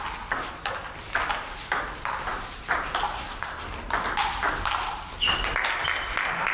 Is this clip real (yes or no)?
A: yes